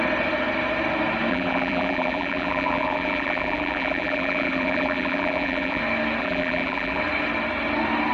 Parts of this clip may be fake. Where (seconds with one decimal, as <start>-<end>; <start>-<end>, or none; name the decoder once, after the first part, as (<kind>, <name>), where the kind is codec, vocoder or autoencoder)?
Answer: 1.3-5.8 (vocoder, BigVGAN v2); 6.2-7.0